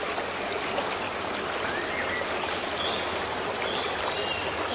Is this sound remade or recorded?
recorded